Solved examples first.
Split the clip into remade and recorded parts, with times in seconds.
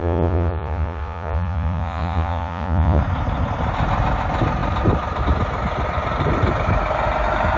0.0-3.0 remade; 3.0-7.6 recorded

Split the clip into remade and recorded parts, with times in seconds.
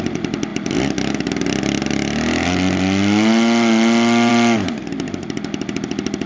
0.0-6.3 recorded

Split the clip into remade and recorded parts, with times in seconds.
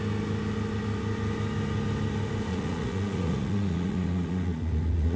0.0-2.5 recorded; 2.5-5.2 remade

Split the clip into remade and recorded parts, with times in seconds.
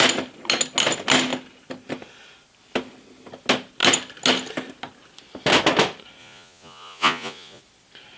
0.0-6.2 recorded; 6.2-7.6 remade; 7.6-8.2 recorded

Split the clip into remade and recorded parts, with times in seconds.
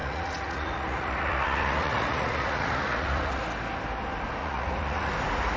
0.0-3.4 remade; 3.4-4.4 recorded; 4.4-5.1 remade; 5.1-5.6 recorded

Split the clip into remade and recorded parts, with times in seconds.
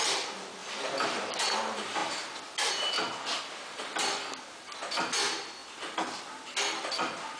0.0-7.4 recorded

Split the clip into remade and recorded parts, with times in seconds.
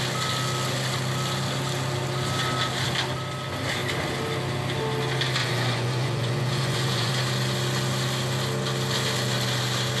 0.0-5.4 recorded; 5.4-7.1 remade; 7.1-10.0 recorded